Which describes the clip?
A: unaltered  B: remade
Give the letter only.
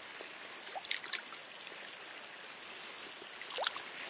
A